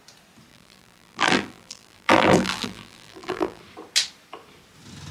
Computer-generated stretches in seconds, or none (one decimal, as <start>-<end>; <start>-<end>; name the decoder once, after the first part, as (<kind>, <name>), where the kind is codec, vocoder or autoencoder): 0.5-3.6 (vocoder, BigVGAN v2)